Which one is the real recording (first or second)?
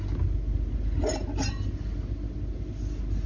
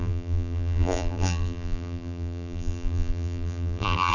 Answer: first